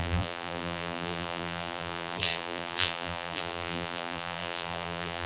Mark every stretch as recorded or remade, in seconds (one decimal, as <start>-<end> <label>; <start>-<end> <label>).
0.0-5.3 remade